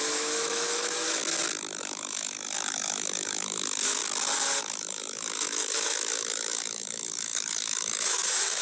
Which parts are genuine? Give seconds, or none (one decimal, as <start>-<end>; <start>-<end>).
1.2-1.8; 4.0-4.6